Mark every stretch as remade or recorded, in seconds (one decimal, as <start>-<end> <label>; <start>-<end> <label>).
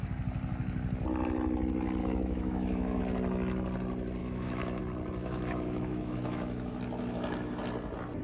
0.0-2.0 recorded; 2.0-3.0 remade; 3.0-4.2 recorded; 4.2-4.8 remade; 4.8-5.2 recorded; 5.2-6.8 remade; 6.8-8.2 recorded